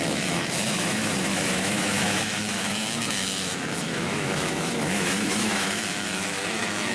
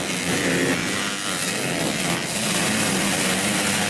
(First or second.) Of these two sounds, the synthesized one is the first